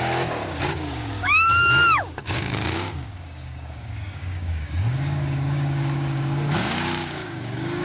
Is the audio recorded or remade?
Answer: remade